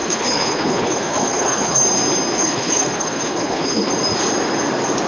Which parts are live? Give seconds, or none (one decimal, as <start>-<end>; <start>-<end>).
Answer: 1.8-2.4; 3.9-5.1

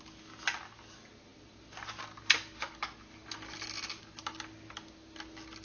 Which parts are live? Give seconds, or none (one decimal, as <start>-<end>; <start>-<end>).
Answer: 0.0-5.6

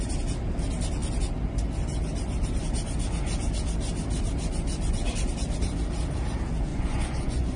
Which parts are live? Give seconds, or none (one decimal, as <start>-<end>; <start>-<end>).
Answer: 0.0-6.7